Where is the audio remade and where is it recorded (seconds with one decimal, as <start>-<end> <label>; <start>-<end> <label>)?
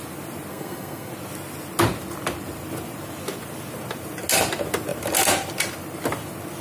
0.0-0.5 recorded; 0.5-1.1 remade; 1.1-6.6 recorded